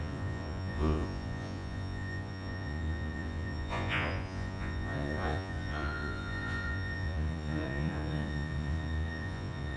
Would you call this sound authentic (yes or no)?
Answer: no